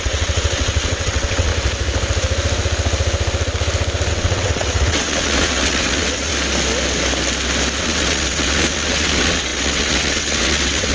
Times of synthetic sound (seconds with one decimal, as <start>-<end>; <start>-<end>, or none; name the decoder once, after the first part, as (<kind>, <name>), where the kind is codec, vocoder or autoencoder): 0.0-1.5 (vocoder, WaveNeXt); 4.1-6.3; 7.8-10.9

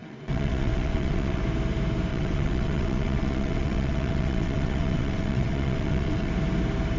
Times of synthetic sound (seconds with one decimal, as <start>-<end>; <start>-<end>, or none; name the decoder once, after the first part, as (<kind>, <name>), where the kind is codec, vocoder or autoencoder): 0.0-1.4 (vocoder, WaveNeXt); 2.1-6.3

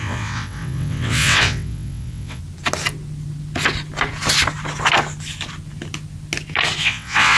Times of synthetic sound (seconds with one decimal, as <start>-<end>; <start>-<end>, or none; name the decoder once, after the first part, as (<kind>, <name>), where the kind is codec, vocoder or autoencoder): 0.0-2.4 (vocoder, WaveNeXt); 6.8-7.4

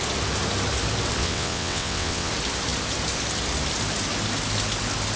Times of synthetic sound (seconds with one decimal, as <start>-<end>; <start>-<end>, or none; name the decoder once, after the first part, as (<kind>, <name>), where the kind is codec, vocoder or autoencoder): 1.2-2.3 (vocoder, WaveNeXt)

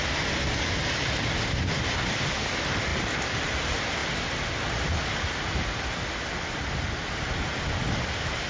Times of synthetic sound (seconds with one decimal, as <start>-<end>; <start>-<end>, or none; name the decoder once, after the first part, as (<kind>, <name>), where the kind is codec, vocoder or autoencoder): none

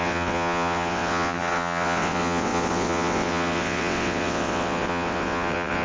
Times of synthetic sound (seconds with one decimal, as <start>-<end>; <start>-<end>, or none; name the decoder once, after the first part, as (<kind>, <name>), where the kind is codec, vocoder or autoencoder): 0.0-5.8 (vocoder, WaveNeXt)

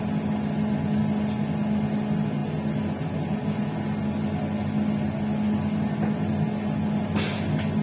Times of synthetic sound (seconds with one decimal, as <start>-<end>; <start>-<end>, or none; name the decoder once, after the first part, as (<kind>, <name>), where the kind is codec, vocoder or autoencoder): none

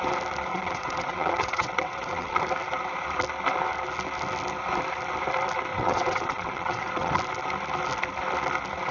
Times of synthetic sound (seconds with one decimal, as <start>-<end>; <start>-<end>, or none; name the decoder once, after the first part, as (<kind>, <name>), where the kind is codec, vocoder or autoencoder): 0.5-2.4 (vocoder, WaveNeXt); 5.7-7.1